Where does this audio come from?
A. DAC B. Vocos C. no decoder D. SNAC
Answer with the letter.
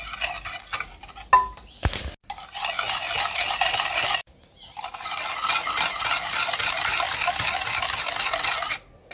C